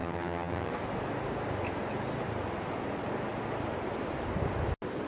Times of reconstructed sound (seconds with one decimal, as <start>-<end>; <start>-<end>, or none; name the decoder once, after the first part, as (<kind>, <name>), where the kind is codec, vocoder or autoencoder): 0.0-0.7 (vocoder, HiFi-GAN)